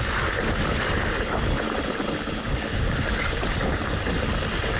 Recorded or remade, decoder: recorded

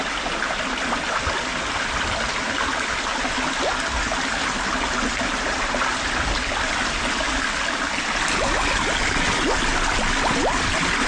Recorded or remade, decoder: recorded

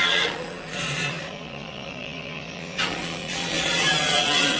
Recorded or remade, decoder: remade, vocoder, Vocos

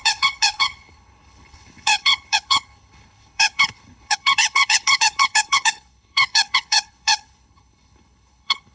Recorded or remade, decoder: remade, codec, HILCodec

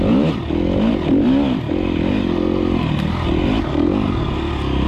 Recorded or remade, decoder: recorded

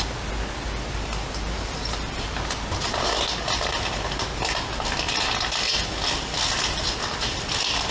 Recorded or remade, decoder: recorded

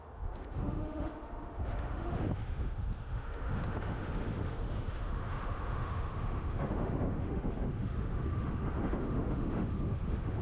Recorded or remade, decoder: remade, autoencoder, DAC-VAE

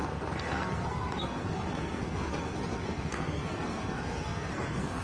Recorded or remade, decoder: remade, codec, SNAC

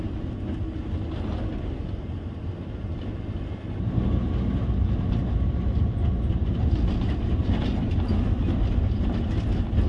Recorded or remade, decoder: recorded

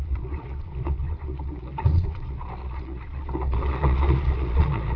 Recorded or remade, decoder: remade, vocoder, Vocos